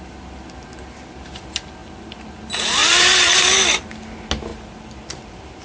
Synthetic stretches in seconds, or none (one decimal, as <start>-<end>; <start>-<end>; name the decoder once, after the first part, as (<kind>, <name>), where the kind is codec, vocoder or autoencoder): 1.8-2.4 (vocoder, BigVGAN v2); 2.8-3.4; 4.5-5.6